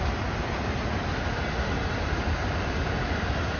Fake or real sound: real